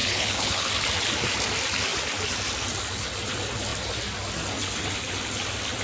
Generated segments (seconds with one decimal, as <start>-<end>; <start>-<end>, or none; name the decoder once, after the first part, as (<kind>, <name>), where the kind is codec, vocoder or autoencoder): 0.0-0.7 (codec, HILCodec)